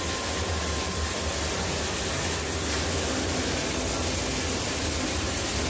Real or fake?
real